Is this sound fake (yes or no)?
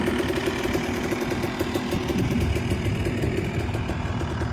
no